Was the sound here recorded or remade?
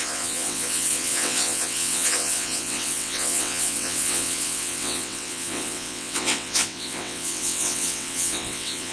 remade